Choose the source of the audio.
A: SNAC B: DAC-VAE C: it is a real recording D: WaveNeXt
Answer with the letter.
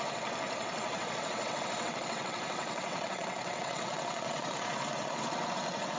D